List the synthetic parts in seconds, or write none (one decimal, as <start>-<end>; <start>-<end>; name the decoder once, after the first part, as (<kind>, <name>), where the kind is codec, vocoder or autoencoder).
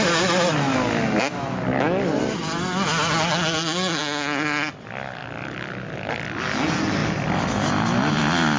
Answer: none